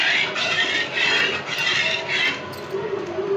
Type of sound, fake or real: real